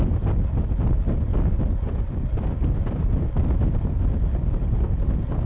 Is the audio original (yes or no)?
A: yes